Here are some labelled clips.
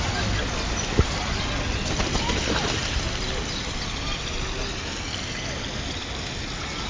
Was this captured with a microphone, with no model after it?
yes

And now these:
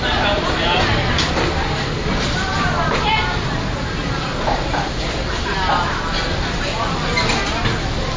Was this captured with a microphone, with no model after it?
yes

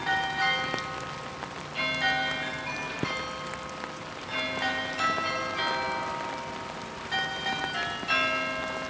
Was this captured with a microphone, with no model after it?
yes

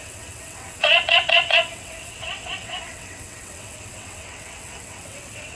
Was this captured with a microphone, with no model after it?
no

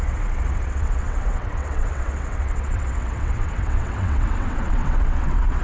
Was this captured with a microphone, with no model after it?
no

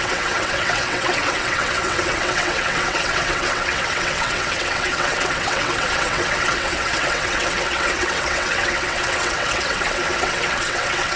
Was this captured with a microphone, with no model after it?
no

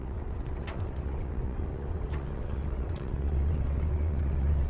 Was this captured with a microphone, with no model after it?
no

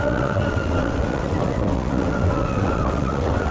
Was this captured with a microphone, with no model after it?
no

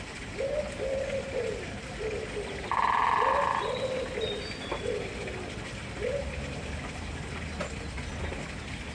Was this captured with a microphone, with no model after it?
yes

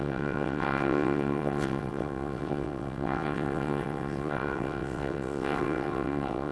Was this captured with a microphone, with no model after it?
no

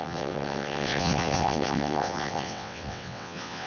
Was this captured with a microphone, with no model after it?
no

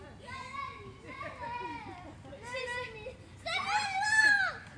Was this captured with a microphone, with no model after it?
yes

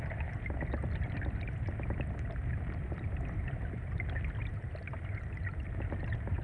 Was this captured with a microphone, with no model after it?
yes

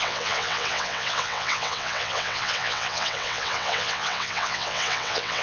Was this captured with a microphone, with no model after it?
no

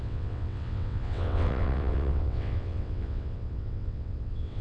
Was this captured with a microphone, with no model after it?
no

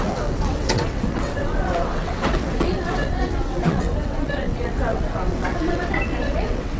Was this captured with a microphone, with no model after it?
no